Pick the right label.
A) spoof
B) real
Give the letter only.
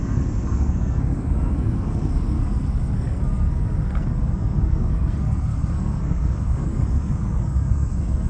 A